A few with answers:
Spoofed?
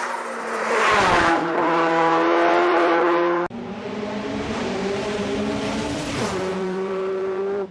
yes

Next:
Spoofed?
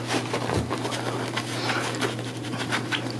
no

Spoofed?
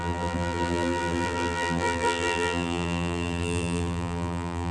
yes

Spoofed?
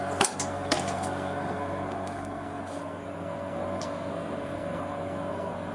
yes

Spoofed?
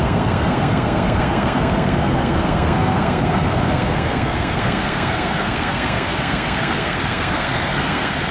yes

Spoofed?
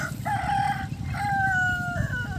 no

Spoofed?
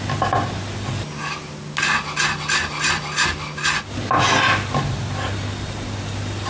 no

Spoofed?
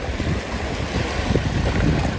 no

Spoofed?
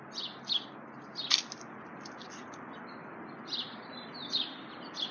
no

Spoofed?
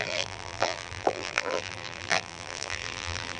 yes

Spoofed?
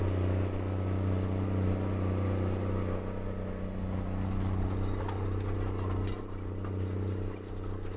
no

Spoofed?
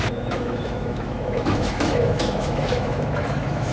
yes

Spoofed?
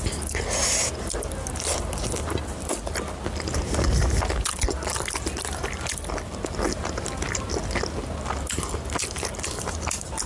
no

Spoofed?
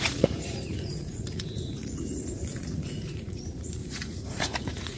yes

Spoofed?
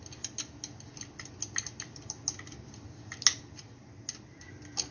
no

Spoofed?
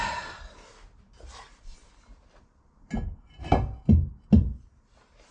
no